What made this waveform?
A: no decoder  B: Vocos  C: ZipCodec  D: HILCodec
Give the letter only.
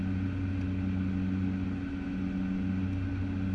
A